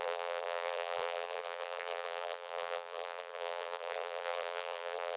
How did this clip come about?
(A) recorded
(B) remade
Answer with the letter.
B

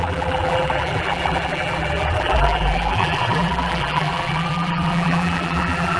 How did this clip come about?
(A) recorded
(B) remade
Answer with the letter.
B